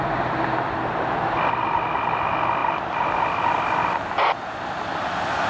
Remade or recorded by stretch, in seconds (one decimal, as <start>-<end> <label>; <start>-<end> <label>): 0.0-5.5 recorded